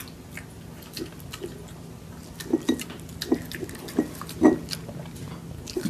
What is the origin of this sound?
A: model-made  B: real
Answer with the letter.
B